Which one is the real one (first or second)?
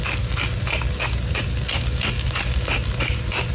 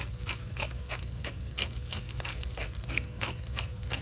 first